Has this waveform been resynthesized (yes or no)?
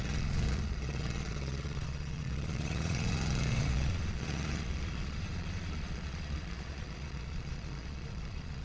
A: yes